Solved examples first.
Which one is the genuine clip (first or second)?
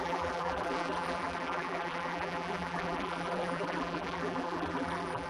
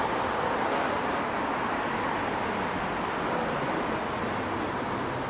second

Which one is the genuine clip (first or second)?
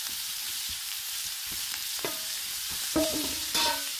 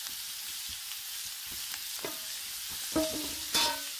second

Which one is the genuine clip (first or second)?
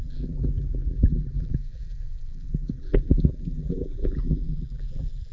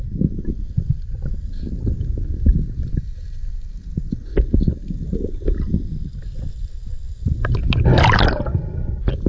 second